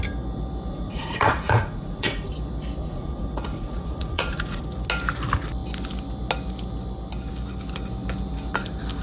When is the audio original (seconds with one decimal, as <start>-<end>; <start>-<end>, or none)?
0.0-0.7; 2.3-2.8; 4.6-9.0